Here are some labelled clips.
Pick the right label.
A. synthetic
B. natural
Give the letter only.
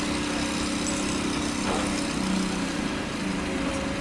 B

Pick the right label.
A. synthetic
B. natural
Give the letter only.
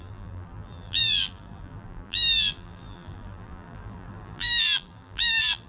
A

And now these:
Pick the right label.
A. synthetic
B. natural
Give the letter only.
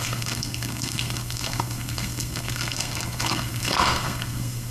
A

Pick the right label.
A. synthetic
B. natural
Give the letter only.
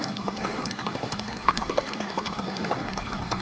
A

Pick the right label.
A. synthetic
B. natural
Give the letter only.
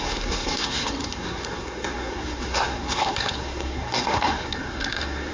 A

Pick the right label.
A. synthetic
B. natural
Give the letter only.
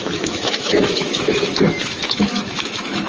A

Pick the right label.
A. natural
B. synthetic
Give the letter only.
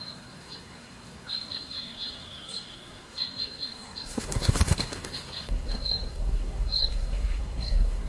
B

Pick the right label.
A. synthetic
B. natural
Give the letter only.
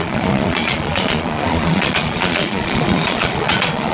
A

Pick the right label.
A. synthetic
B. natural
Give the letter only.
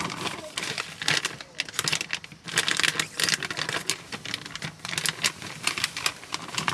B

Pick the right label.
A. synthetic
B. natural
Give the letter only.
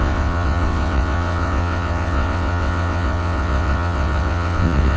A